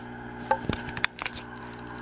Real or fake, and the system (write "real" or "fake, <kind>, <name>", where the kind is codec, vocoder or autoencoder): real